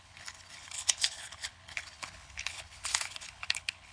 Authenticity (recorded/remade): remade